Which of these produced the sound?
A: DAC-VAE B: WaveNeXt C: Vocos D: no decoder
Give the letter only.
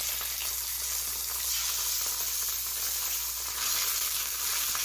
D